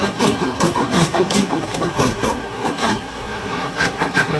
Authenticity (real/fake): fake